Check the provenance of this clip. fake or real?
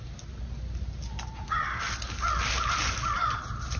real